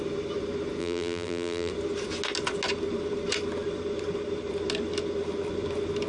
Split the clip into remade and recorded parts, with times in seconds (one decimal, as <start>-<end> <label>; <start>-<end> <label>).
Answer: 0.0-0.8 recorded; 0.8-1.7 remade; 1.7-6.1 recorded